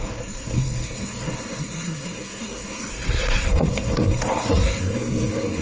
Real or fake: fake